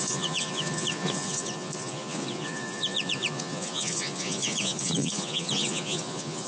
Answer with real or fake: fake